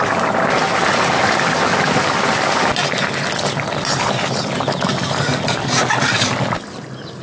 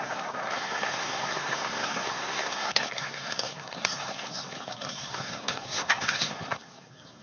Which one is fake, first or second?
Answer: second